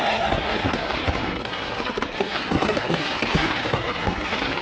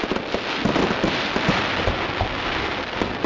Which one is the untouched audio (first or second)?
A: second